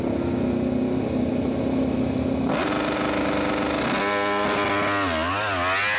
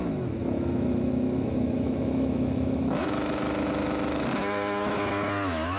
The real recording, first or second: first